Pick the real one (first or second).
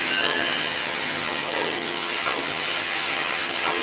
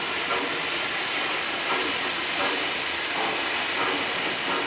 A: second